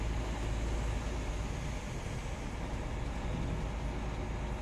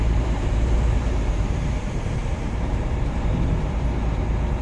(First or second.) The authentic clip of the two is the first